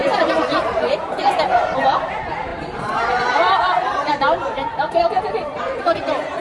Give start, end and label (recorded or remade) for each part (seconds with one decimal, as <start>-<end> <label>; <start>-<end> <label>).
0.0-2.0 remade; 2.0-6.4 recorded